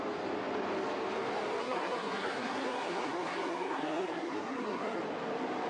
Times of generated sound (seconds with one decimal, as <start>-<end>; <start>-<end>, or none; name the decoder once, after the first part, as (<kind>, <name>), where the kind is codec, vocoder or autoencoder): 1.6-5.0 (codec, SNAC)